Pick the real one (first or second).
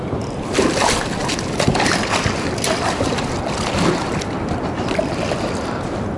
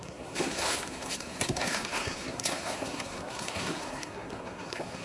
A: first